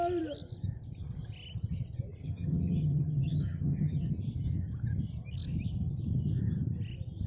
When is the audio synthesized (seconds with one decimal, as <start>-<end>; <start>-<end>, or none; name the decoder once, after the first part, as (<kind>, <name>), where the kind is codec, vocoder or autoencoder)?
2.2-4.1 (vocoder, HiFi-GAN)